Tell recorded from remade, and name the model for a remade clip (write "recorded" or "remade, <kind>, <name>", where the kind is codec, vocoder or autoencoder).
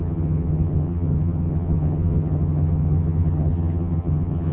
remade, vocoder, HiFi-GAN